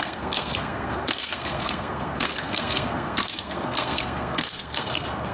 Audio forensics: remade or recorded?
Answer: remade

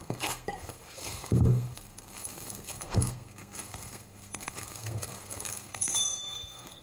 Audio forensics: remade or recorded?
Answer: remade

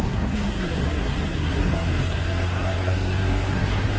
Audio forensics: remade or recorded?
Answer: remade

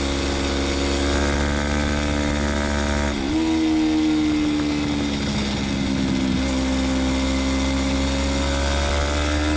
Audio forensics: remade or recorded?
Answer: recorded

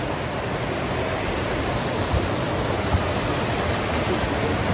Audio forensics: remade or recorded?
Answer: recorded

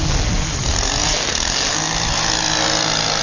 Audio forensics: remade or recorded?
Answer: recorded